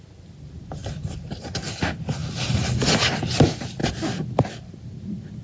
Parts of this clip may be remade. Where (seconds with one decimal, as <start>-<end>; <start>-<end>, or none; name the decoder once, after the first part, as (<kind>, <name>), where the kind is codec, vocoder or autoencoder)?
0.8-1.4 (vocoder, BigVGAN v2); 2.2-2.7